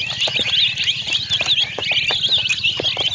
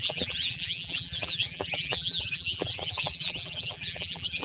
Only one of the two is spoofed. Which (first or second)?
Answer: second